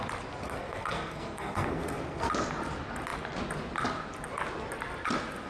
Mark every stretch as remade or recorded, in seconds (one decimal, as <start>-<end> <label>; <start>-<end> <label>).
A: 0.0-0.4 recorded; 0.4-2.3 remade; 2.3-5.5 recorded